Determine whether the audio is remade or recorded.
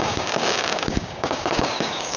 remade